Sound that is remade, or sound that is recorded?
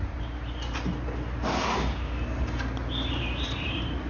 recorded